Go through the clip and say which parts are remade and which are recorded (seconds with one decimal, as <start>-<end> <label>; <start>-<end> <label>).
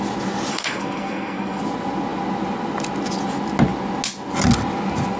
0.0-0.5 recorded; 0.5-1.6 remade; 1.6-5.2 recorded